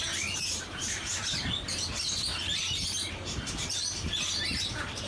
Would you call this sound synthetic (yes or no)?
yes